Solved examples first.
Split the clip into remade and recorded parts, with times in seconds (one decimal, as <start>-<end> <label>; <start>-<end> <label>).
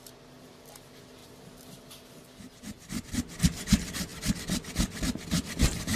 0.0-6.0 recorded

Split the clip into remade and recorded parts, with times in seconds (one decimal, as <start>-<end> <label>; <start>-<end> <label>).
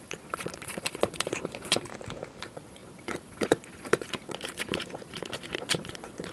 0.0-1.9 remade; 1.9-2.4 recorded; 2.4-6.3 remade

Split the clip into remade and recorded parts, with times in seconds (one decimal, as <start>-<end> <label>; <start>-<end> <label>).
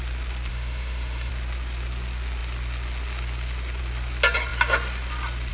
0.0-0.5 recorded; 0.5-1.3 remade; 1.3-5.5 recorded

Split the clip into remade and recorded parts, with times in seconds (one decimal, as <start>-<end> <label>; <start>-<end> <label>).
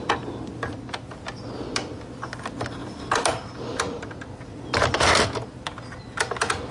0.0-6.7 recorded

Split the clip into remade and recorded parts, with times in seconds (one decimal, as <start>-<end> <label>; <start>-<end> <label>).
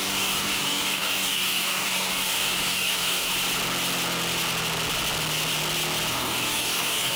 0.0-3.3 remade; 3.3-6.1 recorded; 6.1-7.2 remade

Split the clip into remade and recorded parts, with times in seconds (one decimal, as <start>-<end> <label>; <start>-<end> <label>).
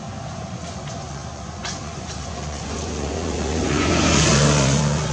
0.0-5.1 remade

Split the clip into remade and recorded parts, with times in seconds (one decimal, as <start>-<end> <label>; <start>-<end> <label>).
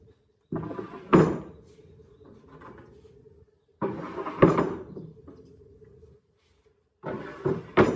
0.0-3.7 recorded; 3.7-4.6 remade; 4.6-8.0 recorded